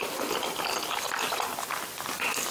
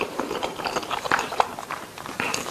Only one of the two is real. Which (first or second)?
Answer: first